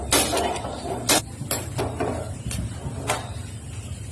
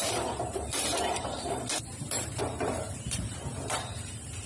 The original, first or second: first